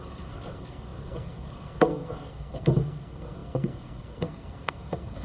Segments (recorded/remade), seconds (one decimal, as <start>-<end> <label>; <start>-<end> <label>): 0.0-5.2 remade